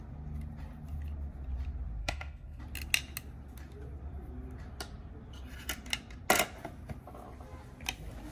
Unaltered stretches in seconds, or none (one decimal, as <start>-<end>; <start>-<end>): 0.0-2.0; 2.6-8.3